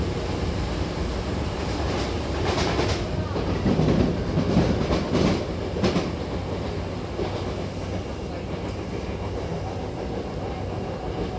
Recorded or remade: recorded